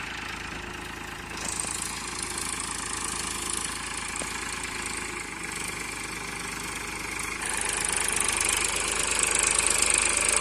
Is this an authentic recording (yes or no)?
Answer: yes